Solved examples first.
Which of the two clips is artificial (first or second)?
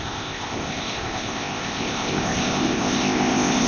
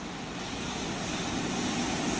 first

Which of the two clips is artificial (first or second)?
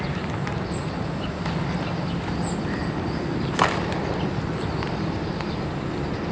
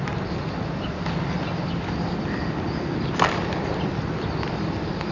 first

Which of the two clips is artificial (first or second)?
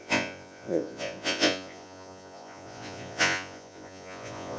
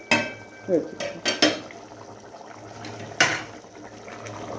first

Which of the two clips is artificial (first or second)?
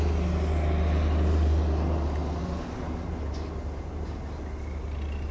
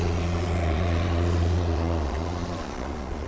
second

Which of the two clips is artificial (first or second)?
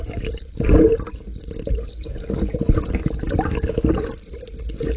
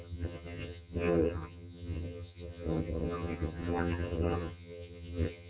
second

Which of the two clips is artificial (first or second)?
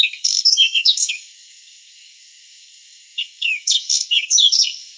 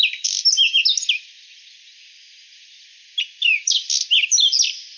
first